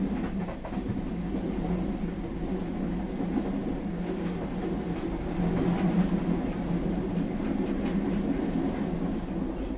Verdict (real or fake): real